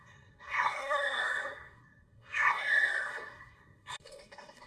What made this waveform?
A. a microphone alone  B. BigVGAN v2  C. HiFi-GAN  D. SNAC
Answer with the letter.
D